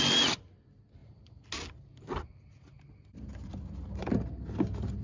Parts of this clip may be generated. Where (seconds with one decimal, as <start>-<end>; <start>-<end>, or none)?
none